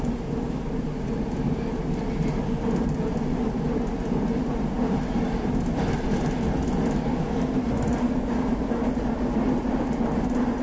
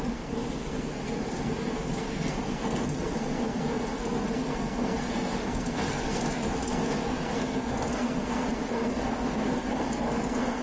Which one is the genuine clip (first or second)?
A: first